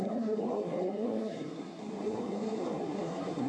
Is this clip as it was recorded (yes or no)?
no